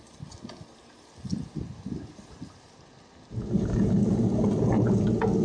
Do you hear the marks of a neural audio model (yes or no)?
no